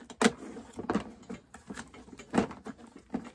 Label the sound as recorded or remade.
recorded